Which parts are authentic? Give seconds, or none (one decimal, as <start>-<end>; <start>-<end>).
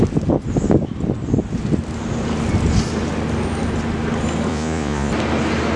0.0-4.5; 5.1-5.8